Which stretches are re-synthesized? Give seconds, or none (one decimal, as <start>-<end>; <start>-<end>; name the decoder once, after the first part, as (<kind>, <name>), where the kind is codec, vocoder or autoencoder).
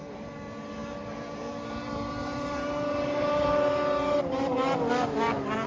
none